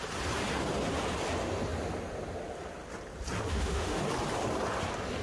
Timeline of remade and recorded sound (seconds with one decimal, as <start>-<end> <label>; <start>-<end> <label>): 0.0-3.5 recorded; 3.5-4.0 remade; 4.0-5.2 recorded

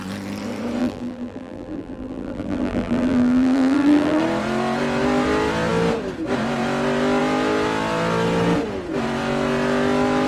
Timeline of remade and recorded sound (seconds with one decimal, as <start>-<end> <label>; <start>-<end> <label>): 0.0-0.8 recorded; 0.8-4.2 remade; 4.2-10.3 recorded

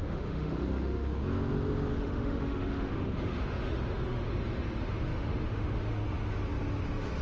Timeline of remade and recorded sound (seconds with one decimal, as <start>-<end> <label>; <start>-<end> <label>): 0.0-1.3 remade; 1.3-2.0 recorded; 2.0-4.3 remade; 4.3-4.8 recorded; 4.8-5.9 remade; 5.9-7.2 recorded

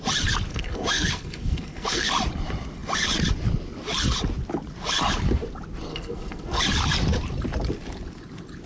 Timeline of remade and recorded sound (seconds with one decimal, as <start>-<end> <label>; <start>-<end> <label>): 0.0-0.5 recorded; 0.5-2.1 remade; 2.1-5.9 recorded; 5.9-6.6 remade; 6.6-8.7 recorded